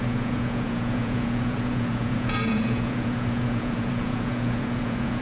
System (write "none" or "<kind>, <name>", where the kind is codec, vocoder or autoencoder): vocoder, Vocos